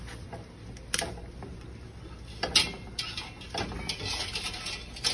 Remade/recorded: recorded